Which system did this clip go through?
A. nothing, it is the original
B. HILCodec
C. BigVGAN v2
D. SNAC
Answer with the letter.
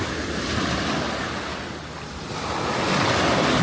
C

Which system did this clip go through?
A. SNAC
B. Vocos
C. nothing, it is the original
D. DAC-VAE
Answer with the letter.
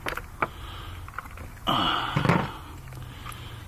C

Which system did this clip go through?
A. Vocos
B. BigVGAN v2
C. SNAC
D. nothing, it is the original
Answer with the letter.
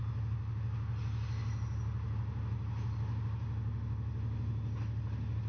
D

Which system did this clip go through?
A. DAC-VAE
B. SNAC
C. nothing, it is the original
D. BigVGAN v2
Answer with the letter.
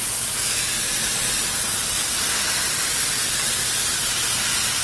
C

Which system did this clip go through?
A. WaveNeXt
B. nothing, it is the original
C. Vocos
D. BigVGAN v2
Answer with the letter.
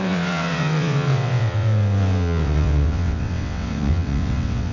A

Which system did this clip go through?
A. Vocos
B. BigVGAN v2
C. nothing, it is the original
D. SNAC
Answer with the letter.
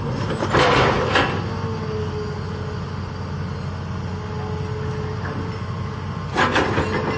C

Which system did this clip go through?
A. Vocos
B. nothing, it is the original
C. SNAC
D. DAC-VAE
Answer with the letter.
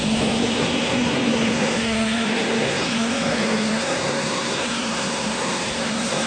C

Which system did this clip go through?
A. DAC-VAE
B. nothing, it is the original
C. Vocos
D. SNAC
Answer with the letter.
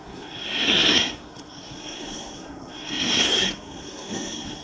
D